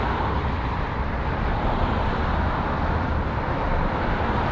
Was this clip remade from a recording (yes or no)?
yes